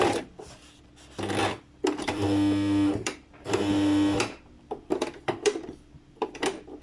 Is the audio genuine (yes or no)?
no